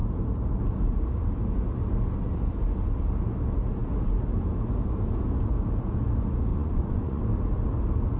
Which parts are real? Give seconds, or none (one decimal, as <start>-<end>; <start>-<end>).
0.0-6.5; 7.2-8.2